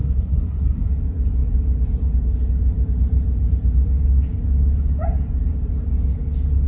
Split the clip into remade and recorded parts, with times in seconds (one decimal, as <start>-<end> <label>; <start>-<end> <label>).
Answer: 0.0-0.9 remade; 0.9-6.7 recorded